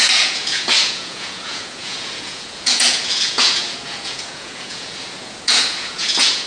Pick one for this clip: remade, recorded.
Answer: remade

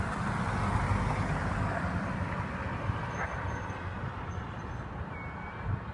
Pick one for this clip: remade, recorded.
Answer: recorded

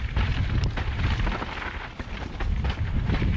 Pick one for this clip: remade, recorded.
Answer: remade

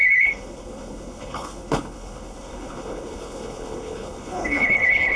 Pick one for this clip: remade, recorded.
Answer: remade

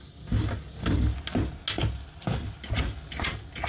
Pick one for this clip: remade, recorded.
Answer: recorded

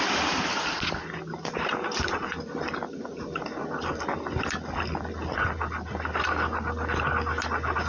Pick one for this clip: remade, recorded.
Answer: recorded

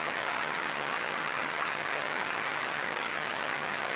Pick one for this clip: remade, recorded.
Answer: remade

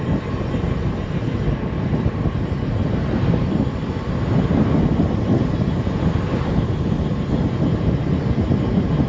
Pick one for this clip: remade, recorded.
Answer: recorded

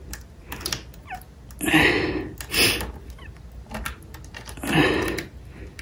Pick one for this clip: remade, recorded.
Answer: recorded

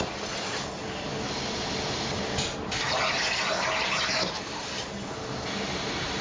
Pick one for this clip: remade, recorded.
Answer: recorded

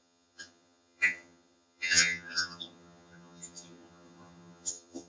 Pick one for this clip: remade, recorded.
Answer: remade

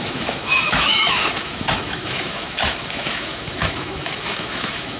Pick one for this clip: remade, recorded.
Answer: remade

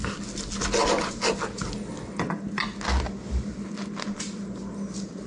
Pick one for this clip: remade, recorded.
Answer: recorded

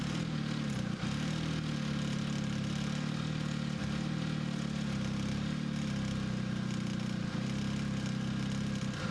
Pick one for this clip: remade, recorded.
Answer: recorded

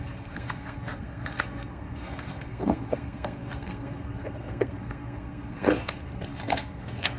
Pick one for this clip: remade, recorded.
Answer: remade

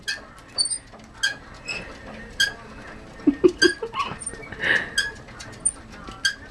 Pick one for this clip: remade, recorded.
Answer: recorded